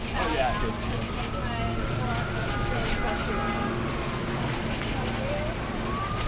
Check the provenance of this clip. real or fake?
real